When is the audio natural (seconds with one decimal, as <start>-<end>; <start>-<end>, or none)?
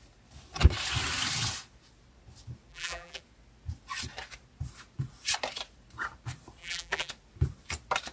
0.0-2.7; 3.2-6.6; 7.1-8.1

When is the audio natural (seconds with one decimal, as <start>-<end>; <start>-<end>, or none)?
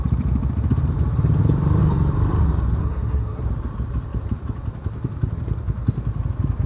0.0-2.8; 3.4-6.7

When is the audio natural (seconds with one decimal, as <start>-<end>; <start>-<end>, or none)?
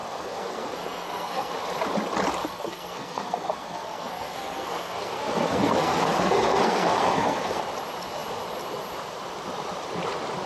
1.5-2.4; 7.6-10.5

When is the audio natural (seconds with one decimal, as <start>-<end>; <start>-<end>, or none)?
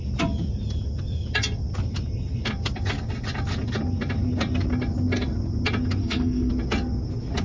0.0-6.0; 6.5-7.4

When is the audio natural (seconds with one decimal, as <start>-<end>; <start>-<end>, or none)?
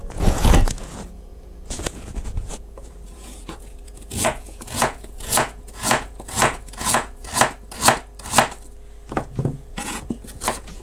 7.3-9.1